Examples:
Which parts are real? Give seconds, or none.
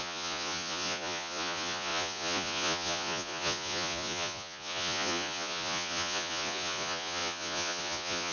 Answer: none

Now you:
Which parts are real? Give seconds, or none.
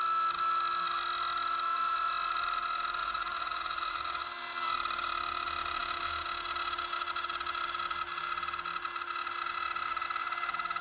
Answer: 0.0-3.0; 4.2-10.8